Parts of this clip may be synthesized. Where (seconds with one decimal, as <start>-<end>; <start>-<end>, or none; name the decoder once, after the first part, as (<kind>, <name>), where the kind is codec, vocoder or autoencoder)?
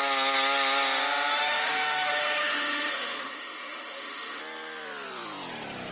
1.3-4.4 (autoencoder, DAC-VAE)